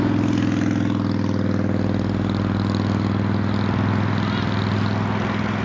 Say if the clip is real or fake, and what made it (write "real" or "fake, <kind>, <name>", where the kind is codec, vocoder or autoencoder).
real